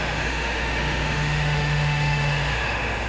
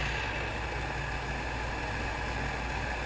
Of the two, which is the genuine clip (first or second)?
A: second